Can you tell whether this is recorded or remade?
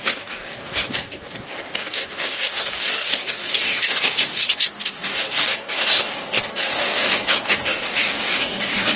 remade